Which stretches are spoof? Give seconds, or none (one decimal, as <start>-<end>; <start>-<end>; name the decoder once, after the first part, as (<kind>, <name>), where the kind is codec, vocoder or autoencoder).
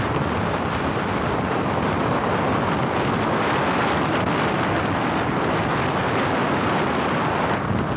none